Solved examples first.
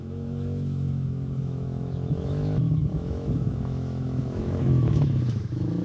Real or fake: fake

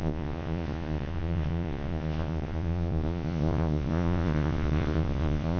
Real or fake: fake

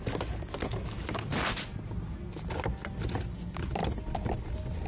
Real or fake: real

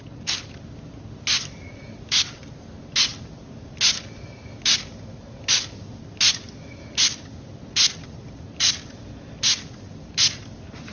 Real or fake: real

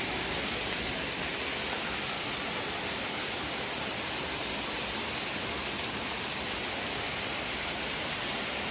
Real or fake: real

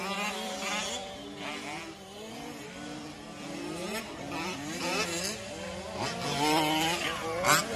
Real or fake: real